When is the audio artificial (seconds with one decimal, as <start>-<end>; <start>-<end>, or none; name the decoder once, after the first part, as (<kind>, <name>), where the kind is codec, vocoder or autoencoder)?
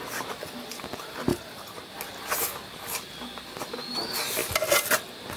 1.3-1.9 (vocoder, BigVGAN v2)